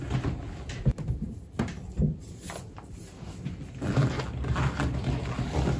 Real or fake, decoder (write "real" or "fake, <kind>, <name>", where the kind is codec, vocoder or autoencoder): real